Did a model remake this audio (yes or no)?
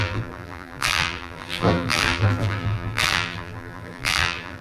yes